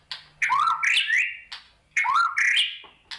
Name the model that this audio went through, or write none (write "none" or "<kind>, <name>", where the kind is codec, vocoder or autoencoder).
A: none